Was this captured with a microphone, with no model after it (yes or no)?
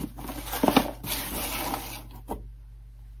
yes